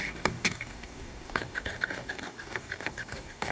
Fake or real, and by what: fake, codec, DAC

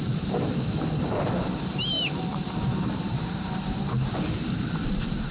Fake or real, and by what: fake, vocoder, BigVGAN v2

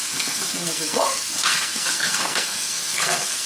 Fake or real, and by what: fake, codec, SNAC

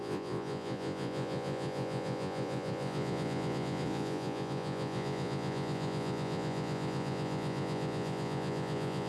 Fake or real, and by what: fake, vocoder, Vocos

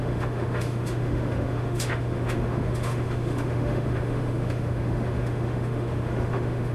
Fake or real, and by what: fake, autoencoder, DAC-VAE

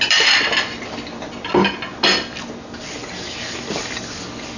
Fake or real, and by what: real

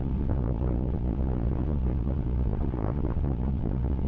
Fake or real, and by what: fake, vocoder, Vocos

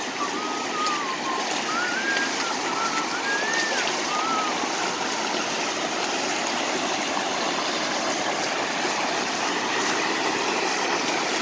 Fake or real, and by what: real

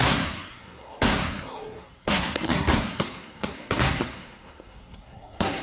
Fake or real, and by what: fake, codec, SNAC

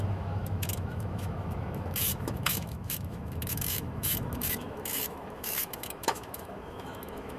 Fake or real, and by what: fake, autoencoder, DAC-VAE